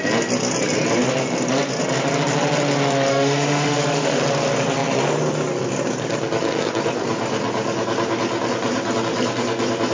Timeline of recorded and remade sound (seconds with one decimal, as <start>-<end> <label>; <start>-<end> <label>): 0.0-3.1 recorded; 3.1-4.2 remade; 4.2-9.9 recorded